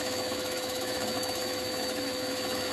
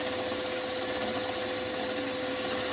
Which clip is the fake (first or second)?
first